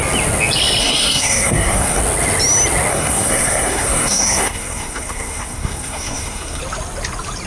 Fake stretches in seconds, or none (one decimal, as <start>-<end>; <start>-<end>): 0.8-2.0; 2.9-6.6